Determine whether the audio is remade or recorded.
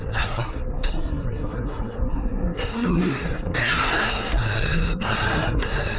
remade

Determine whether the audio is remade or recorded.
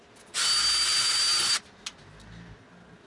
recorded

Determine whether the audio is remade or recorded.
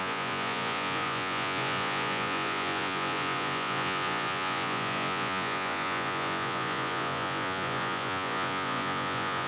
remade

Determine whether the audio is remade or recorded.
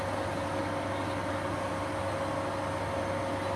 recorded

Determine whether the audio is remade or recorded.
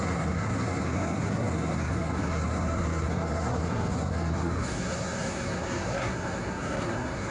remade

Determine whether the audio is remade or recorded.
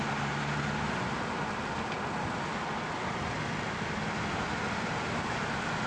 recorded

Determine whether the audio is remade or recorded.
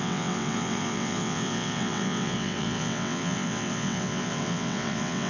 remade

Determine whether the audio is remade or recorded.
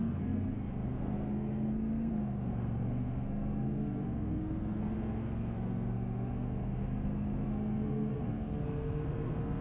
remade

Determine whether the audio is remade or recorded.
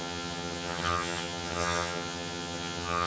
remade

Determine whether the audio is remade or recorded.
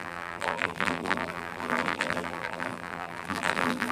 remade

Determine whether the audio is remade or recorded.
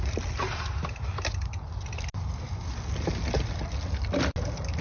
recorded